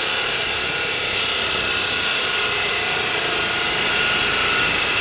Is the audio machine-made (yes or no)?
no